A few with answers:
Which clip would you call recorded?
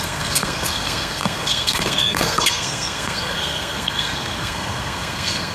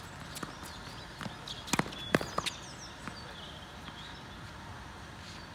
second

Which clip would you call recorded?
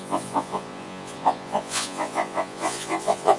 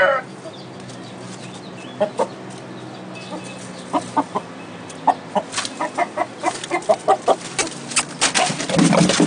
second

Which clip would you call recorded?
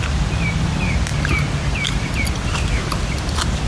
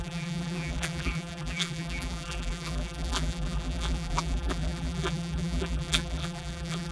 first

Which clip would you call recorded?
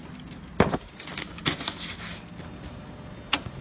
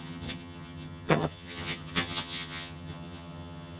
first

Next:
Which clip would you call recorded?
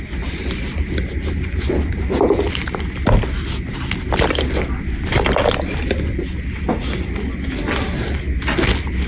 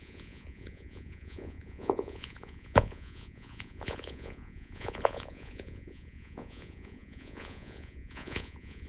first